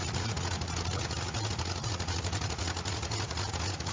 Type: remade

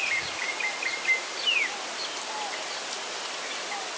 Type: recorded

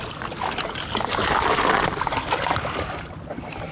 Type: recorded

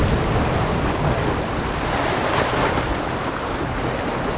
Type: recorded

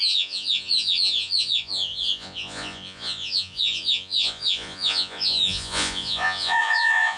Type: remade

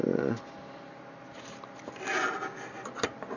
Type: recorded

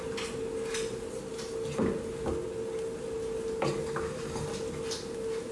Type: recorded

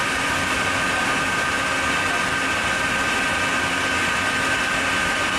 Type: recorded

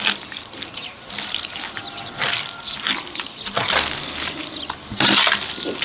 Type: recorded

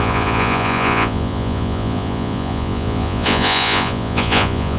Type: remade